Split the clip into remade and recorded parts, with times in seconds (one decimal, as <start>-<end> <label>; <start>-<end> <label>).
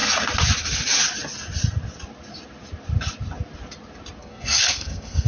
0.0-4.2 recorded; 4.2-5.3 remade